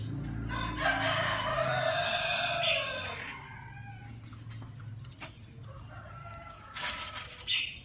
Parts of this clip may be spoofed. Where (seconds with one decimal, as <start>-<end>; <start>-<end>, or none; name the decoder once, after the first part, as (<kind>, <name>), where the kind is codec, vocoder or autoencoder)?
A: 1.5-2.1 (codec, DAC); 6.2-6.9